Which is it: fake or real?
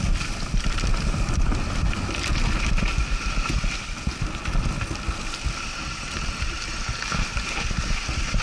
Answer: real